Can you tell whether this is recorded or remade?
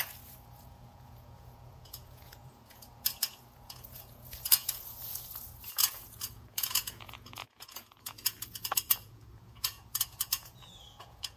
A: remade